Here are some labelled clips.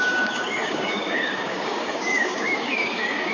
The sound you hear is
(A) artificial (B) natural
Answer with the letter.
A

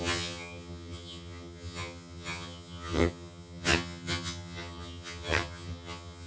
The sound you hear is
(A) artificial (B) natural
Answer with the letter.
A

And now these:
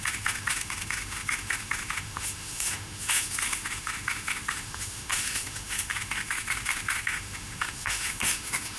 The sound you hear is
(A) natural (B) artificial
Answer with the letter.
B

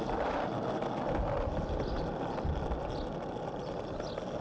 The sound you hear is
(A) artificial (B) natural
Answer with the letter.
B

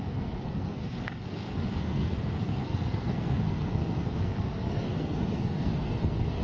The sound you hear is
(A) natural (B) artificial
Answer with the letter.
B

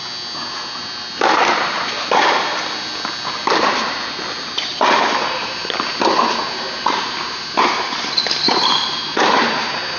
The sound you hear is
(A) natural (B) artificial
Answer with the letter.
A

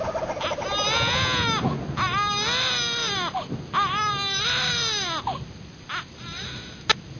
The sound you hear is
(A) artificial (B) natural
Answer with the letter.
B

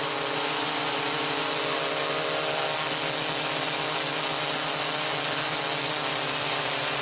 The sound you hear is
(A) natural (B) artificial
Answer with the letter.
A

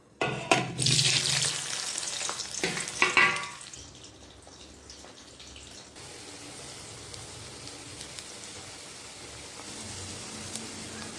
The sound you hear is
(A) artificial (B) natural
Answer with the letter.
B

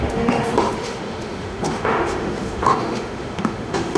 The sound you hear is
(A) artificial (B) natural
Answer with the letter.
A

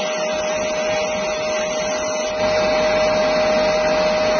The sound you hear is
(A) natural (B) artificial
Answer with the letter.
A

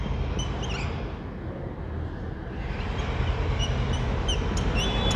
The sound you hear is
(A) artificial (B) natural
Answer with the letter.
B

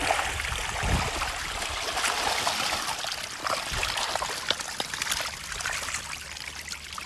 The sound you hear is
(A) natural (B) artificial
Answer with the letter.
A